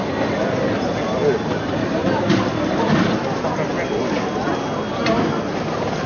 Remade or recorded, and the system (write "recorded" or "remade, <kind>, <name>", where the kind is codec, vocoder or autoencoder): recorded